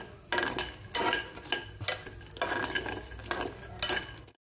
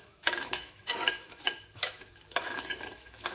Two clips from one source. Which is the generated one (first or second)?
second